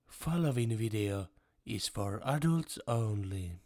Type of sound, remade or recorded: recorded